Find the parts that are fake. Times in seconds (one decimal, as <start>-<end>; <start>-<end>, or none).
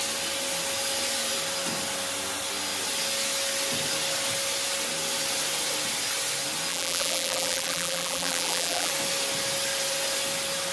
6.7-8.9